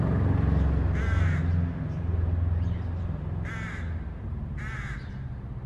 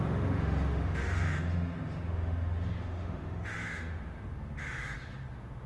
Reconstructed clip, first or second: second